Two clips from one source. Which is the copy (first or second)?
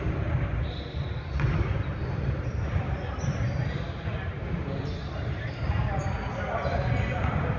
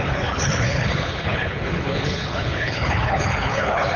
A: second